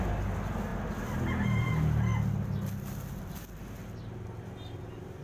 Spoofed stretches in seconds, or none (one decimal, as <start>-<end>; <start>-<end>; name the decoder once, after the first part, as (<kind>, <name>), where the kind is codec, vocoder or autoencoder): none